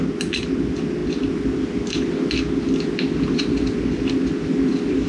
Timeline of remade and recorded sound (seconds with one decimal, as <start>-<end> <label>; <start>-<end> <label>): 0.0-5.1 recorded